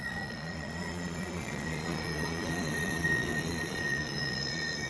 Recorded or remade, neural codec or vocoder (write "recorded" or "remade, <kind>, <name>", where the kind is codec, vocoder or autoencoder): remade, vocoder, Vocos